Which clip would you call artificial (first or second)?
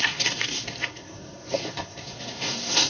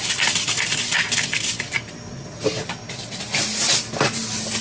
first